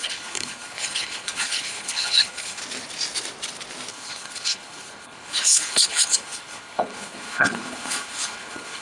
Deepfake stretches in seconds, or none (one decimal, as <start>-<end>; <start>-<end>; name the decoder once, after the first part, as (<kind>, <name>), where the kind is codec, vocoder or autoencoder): 0.0-2.6 (codec, HILCodec); 3.9-8.8